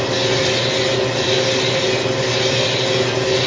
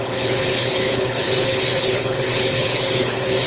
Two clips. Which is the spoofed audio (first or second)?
second